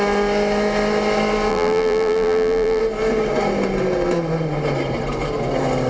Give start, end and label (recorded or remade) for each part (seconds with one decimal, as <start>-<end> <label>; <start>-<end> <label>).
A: 0.0-1.5 recorded; 1.5-2.8 remade; 2.8-5.9 recorded